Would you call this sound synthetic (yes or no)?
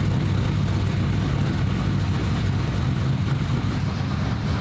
no